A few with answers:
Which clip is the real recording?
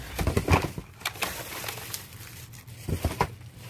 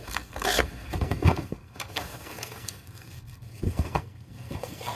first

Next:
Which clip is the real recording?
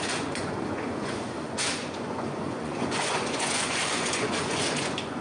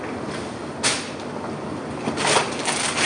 second